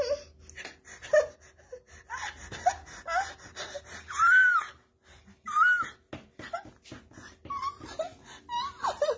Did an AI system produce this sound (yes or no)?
no